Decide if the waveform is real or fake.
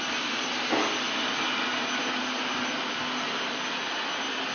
real